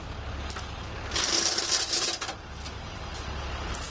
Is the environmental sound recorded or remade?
recorded